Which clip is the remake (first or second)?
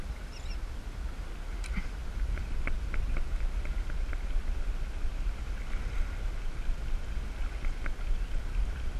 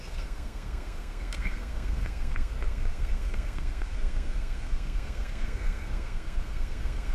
second